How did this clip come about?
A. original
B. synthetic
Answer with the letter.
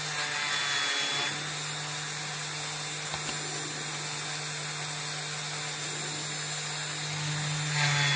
A